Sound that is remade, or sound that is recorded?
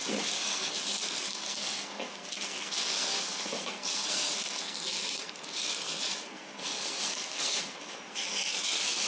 remade